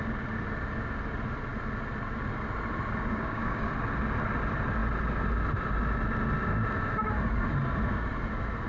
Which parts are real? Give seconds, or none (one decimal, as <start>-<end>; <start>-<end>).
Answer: 0.0-3.0; 3.7-8.7